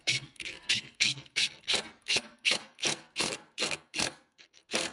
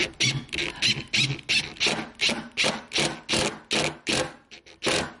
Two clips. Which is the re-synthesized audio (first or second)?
first